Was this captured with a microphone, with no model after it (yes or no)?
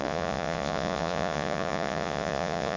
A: no